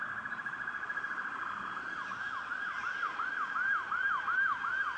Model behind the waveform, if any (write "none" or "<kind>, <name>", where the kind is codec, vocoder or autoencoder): none